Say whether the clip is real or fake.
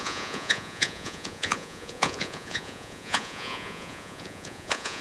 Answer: fake